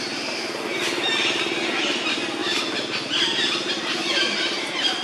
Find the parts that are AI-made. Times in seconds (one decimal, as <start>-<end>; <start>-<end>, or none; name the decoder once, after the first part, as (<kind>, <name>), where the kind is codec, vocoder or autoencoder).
none